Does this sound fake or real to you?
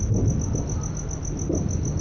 real